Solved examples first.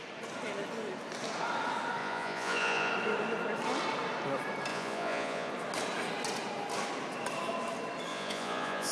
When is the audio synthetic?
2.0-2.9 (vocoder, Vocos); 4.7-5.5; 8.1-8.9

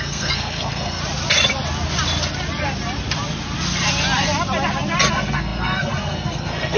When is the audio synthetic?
0.0-1.0 (codec, SNAC); 5.1-6.8

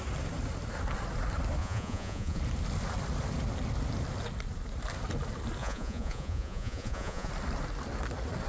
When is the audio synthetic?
1.6-2.4 (vocoder, Vocos); 5.6-7.3

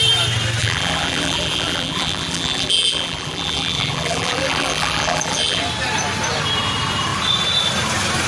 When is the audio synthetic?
0.6-5.6 (vocoder, BigVGAN v2)